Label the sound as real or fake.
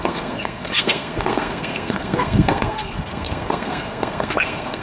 fake